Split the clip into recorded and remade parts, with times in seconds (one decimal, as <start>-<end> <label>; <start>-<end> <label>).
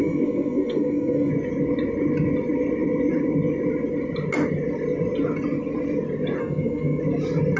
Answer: 0.0-1.3 remade; 1.3-6.4 recorded; 6.4-7.0 remade; 7.0-7.6 recorded